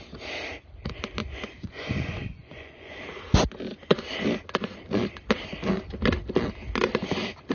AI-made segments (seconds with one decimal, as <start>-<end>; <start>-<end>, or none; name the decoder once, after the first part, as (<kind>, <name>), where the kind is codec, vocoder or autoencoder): 1.2-3.0 (vocoder, Vocos)